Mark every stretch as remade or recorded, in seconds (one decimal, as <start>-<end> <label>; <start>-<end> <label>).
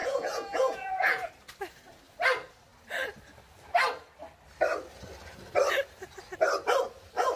0.0-1.3 remade; 1.3-7.4 recorded